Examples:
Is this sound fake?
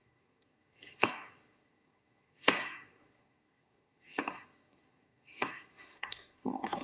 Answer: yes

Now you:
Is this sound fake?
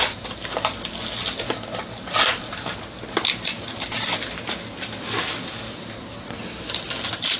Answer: no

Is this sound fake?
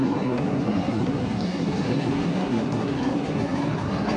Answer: yes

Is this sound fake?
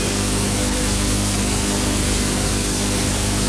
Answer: yes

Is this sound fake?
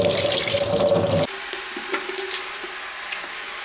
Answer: no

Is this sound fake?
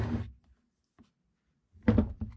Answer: no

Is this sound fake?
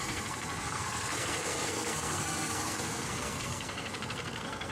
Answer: yes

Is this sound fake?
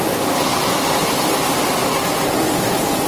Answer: no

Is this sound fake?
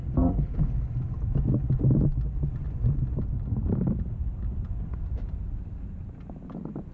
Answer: no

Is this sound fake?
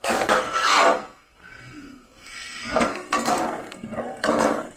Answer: yes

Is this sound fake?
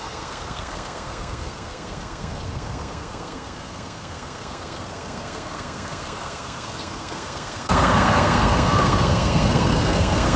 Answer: yes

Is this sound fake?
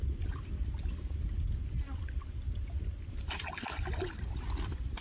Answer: no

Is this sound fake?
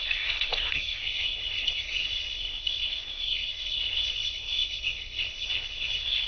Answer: yes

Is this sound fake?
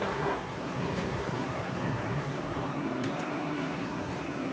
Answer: yes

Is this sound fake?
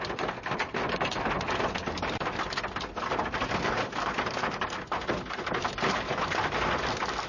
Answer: no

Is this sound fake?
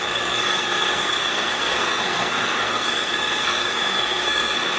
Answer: yes